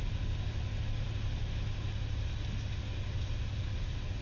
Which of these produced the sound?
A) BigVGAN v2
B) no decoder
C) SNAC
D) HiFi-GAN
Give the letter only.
B